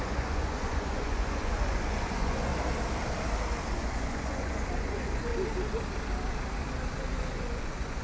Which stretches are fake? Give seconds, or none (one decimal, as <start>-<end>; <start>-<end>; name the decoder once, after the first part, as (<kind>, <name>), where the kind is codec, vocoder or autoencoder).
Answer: 0.0-2.5 (vocoder, Vocos); 3.7-5.3; 6.9-8.0